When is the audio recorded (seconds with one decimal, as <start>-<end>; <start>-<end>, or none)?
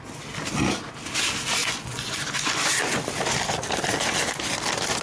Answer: 0.0-1.6; 3.0-5.0